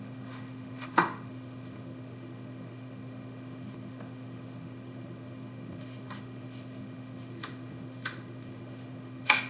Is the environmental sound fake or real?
fake